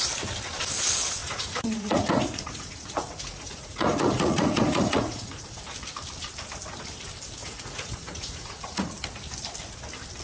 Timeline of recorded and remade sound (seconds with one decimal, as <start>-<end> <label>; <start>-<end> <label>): 0.0-1.2 recorded; 1.2-5.6 remade; 5.6-7.4 recorded; 7.4-8.9 remade; 8.9-10.2 recorded